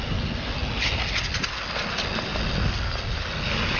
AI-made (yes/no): no